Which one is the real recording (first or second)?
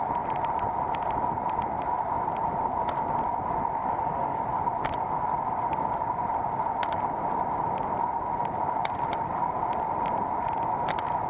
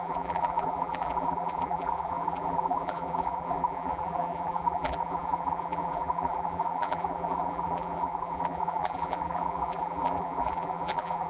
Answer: first